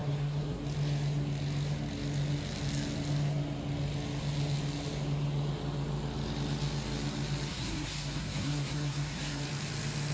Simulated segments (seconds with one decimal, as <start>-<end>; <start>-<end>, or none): 0.0-0.6; 7.5-9.4